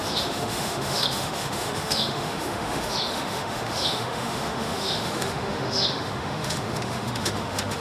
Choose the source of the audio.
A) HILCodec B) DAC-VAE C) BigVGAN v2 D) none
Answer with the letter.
B